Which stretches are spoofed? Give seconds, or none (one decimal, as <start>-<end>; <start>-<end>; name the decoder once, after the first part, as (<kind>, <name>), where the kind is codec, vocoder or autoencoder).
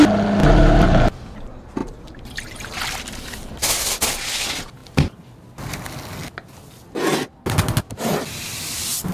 0.4-1.2 (vocoder, BigVGAN v2); 1.8-2.8